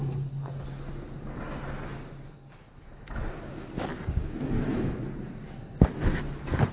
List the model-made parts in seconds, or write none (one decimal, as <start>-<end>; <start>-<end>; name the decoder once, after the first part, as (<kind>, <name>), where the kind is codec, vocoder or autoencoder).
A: 3.9-4.5 (codec, DAC)